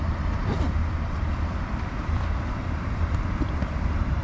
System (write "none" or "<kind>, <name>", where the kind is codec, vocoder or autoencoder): vocoder, BigVGAN v2